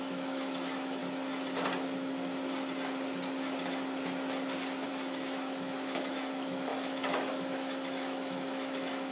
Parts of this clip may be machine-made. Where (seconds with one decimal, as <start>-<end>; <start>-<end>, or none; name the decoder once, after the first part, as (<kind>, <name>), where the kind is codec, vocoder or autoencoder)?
0.0-1.0 (autoencoder, DAC-VAE); 4.9-9.1